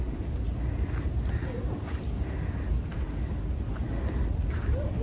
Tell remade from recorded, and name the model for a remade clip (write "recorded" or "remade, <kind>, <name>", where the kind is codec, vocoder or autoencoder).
recorded